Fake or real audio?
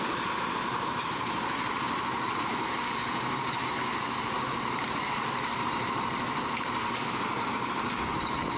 fake